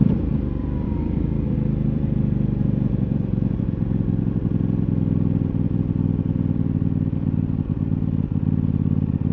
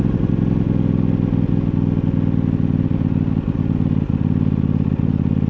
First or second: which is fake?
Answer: first